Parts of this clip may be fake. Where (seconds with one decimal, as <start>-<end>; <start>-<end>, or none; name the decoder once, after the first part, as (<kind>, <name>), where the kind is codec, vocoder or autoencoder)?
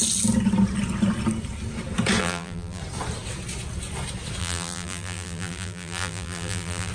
2.2-2.8 (vocoder, BigVGAN v2); 4.4-6.9